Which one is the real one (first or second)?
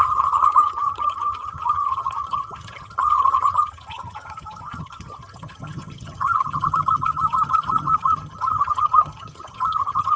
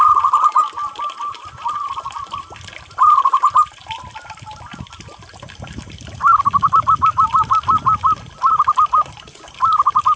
second